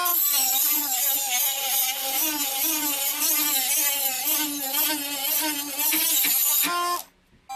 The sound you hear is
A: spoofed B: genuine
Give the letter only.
B